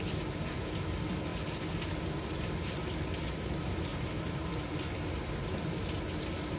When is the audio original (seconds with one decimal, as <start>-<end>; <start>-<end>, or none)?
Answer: 0.0-3.9; 4.5-6.6